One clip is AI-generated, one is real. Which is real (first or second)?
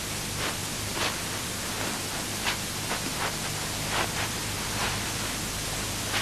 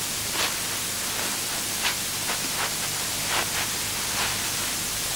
first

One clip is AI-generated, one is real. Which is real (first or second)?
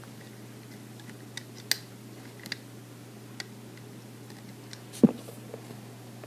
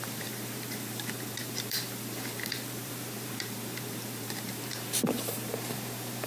first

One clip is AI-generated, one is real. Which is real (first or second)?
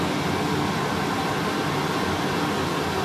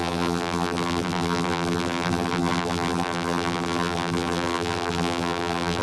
first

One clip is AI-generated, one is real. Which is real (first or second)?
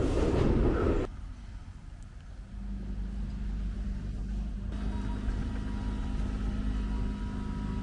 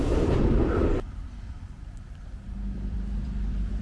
first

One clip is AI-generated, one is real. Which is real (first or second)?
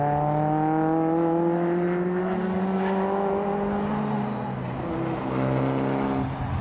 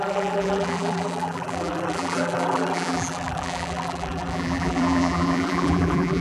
first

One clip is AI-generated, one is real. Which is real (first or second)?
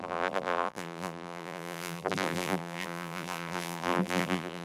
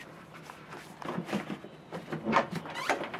second